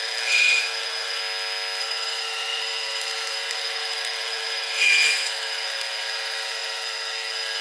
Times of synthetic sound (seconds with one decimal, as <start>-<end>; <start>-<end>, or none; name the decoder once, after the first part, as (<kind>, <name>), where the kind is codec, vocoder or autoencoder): 0.0-1.2 (codec, SNAC); 1.8-7.6